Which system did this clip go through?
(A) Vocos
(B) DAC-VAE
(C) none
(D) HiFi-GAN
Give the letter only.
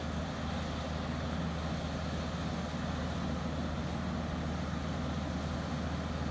C